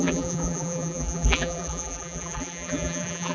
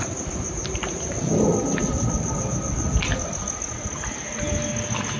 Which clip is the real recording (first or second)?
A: second